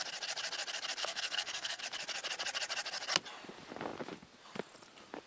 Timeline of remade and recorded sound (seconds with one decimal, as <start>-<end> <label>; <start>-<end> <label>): 0.0-1.0 recorded; 1.0-1.8 remade; 1.8-5.3 recorded